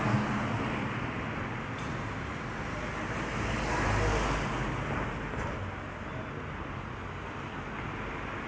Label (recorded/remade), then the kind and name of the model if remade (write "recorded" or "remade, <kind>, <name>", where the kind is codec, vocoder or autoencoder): recorded